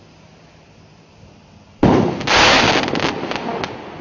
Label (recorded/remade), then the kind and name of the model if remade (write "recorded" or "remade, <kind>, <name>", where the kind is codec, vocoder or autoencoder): recorded